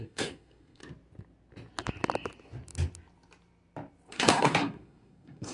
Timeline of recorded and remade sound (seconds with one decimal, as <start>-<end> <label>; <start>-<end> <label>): 0.0-0.8 remade; 0.8-4.1 recorded; 4.1-5.5 remade